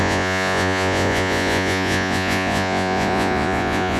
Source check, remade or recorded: remade